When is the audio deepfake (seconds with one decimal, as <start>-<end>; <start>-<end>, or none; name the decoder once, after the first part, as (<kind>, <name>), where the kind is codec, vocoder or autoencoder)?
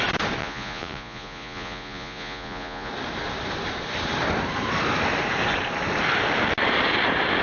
0.4-2.9 (vocoder, Vocos)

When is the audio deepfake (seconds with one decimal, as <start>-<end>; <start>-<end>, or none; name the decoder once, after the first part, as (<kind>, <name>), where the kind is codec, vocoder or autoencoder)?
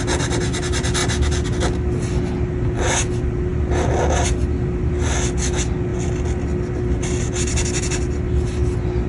none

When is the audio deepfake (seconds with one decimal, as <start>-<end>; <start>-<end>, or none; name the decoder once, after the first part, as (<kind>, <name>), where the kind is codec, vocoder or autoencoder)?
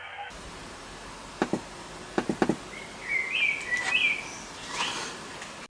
none